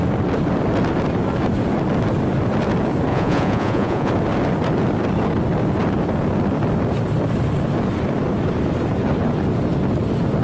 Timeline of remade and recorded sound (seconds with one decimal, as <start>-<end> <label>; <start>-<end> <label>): 0.0-3.1 recorded; 3.1-4.1 remade; 4.1-10.4 recorded